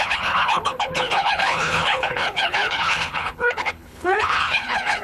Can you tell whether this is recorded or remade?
remade